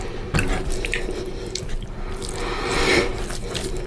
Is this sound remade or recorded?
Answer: remade